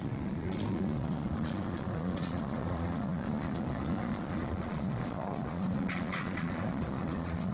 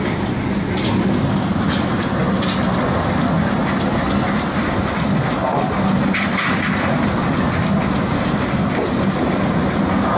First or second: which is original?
second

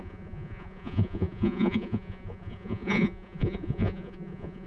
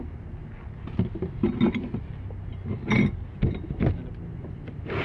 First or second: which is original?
second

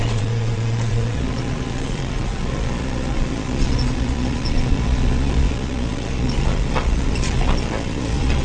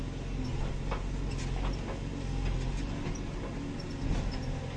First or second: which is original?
second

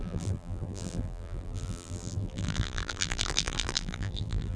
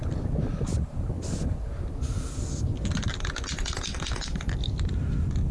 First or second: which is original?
second